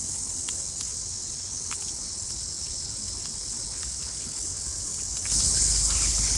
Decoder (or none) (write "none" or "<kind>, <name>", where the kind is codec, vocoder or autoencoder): codec, HILCodec